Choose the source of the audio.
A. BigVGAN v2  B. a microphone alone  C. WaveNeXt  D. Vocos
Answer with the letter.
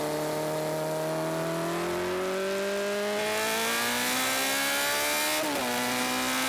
B